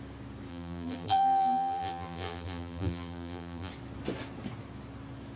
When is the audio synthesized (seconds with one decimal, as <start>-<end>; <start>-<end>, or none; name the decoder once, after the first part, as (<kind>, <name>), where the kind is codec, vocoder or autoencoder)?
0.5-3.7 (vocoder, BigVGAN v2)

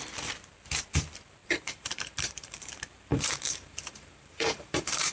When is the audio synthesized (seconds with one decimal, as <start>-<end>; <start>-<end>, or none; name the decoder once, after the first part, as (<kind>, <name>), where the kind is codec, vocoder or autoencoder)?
1.4-2.7 (vocoder, BigVGAN v2); 3.1-5.1

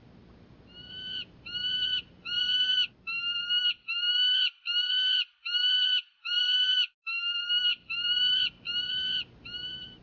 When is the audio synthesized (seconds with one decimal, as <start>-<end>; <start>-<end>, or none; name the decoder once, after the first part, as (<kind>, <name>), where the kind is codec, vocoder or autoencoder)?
7.7-8.4 (vocoder, BigVGAN v2)

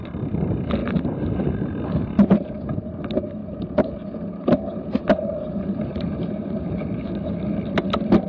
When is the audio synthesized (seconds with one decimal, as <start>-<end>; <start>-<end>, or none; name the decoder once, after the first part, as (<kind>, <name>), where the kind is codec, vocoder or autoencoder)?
0.8-1.7 (vocoder, BigVGAN v2); 3.4-7.1

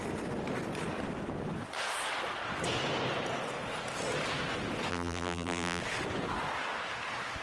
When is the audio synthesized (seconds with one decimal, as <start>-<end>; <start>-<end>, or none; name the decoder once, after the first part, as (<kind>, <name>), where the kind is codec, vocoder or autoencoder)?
4.9-5.8 (vocoder, BigVGAN v2)

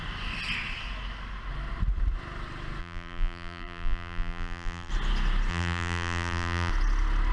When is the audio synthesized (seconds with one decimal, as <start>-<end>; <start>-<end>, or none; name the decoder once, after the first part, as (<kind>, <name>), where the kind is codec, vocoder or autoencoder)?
2.8-4.9 (vocoder, BigVGAN v2); 5.5-6.7